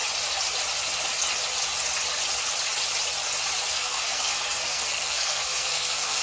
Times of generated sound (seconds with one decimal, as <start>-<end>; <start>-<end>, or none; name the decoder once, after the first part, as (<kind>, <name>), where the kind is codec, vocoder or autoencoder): 3.7-6.2 (codec, SNAC)